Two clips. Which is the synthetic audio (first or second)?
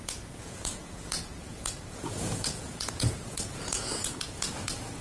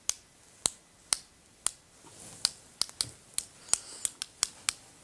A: first